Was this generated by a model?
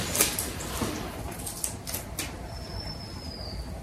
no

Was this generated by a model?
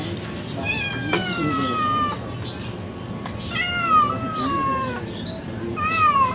no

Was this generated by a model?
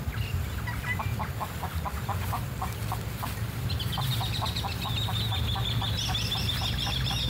no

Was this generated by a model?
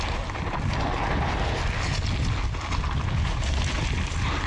no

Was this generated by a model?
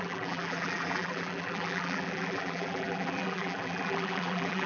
yes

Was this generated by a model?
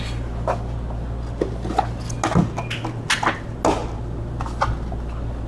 no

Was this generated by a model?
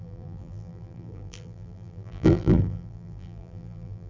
yes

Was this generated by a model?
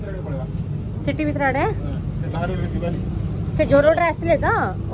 no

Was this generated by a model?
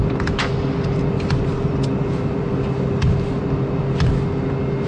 no